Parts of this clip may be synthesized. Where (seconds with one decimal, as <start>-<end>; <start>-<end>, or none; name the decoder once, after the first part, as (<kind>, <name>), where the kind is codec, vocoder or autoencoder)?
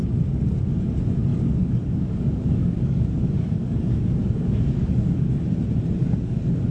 1.3-5.3 (codec, DAC); 6.0-6.7